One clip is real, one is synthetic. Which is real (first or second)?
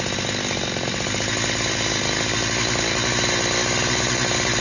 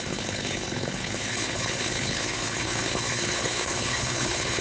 first